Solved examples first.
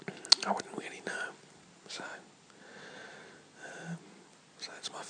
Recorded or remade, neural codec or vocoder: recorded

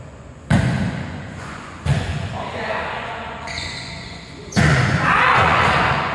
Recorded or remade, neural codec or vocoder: remade, vocoder, Vocos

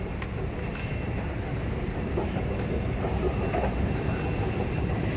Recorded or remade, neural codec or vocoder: recorded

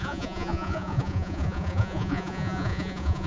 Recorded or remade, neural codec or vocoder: remade, vocoder, Vocos